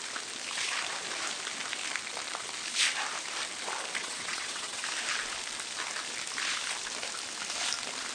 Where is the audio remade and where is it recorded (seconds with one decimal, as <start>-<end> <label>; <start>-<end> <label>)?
0.0-4.0 recorded; 4.0-4.8 remade; 4.8-8.1 recorded